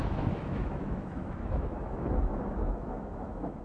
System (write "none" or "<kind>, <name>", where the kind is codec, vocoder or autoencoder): autoencoder, DAC-VAE